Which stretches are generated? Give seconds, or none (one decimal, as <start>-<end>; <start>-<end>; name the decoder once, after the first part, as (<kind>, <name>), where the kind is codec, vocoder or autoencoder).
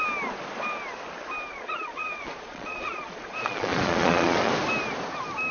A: 1.5-4.5 (vocoder, Vocos)